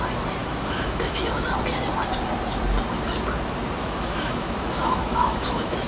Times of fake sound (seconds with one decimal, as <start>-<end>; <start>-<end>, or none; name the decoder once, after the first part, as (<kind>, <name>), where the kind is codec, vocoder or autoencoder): 0.4-1.3 (autoencoder, DAC-VAE); 3.8-5.9